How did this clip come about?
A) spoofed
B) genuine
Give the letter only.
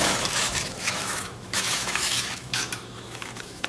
A